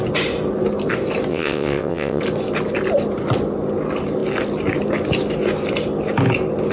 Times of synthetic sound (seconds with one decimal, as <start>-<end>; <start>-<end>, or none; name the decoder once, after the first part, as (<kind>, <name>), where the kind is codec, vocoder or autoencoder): 1.3-2.2 (vocoder, WaveNeXt)